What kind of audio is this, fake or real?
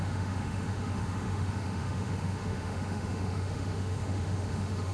fake